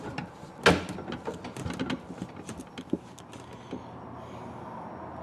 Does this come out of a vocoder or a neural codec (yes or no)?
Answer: no